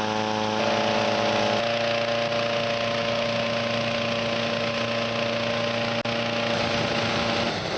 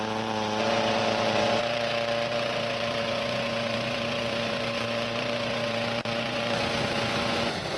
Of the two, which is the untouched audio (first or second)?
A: first